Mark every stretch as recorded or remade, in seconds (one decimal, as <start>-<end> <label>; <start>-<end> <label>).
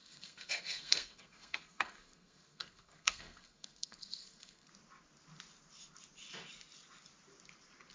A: 0.0-4.7 remade; 4.7-7.9 recorded